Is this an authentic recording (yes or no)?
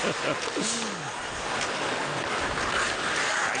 yes